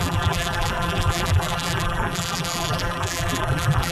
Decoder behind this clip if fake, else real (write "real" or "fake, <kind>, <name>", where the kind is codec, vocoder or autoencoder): fake, vocoder, BigVGAN v2